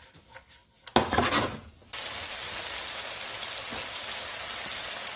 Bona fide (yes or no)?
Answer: yes